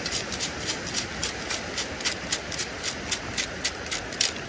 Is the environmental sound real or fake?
real